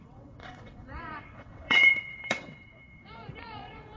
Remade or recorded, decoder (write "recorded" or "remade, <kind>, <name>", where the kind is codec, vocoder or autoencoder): remade, vocoder, WaveNeXt